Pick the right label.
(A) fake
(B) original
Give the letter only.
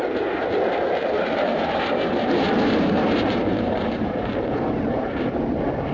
A